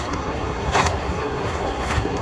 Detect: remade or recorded remade